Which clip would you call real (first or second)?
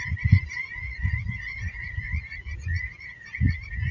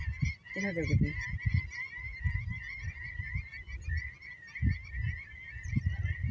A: second